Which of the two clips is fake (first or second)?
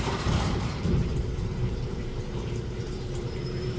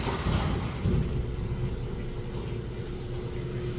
first